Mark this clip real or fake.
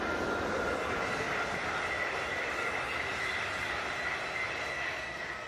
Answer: real